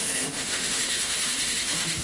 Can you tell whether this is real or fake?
fake